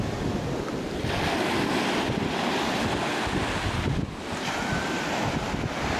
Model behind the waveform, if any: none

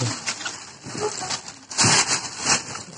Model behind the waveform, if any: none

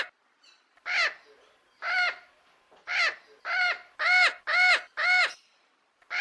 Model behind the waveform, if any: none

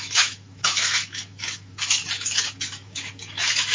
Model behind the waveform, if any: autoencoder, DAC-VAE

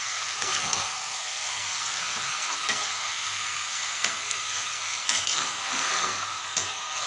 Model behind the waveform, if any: codec, SNAC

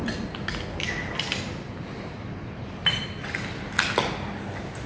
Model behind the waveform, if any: none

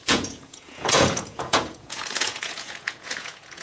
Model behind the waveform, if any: vocoder, Vocos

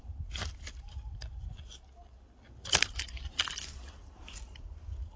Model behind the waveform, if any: none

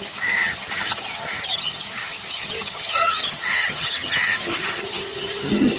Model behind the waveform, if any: vocoder, HiFi-GAN